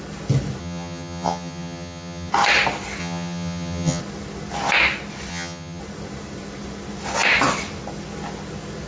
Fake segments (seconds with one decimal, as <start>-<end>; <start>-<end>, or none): 0.6-2.3; 3.0-4.0; 5.3-5.8